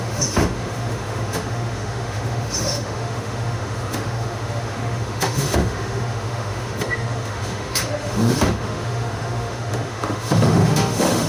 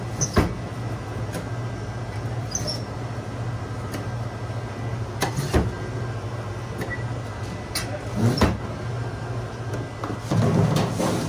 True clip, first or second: second